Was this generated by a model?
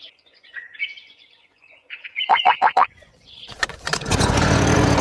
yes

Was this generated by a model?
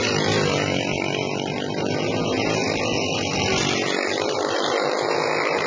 no